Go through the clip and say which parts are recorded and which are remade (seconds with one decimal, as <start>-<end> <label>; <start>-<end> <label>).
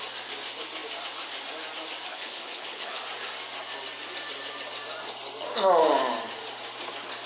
0.0-2.1 recorded; 2.1-3.0 remade; 3.0-7.3 recorded